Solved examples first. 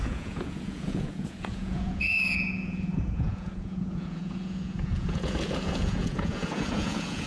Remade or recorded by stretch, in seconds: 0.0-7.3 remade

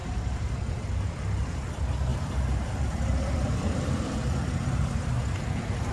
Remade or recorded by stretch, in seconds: 0.0-0.8 remade; 0.8-2.1 recorded; 2.1-5.1 remade; 5.1-5.9 recorded

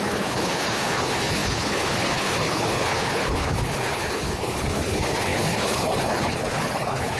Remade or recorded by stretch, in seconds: 0.0-7.2 remade